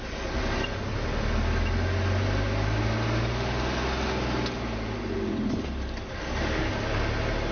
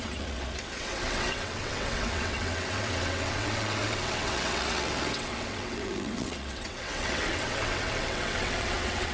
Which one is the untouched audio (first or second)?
first